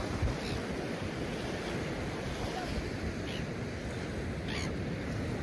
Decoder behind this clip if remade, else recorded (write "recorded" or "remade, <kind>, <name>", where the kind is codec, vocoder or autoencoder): recorded